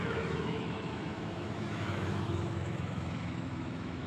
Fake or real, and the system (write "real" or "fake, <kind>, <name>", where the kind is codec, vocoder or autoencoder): fake, autoencoder, DAC-VAE